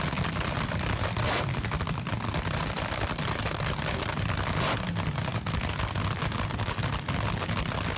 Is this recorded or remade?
recorded